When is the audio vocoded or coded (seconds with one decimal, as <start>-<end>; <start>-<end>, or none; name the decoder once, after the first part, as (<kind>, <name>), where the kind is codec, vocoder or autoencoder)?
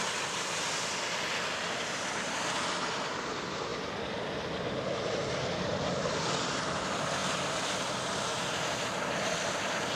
none